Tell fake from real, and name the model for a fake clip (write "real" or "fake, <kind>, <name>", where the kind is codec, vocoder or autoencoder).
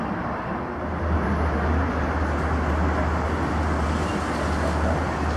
real